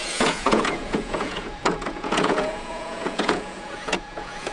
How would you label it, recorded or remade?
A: remade